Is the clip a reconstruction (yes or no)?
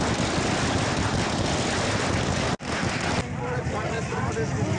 no